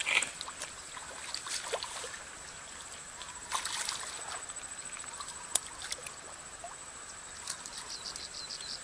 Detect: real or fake real